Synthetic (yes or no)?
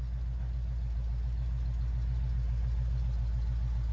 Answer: no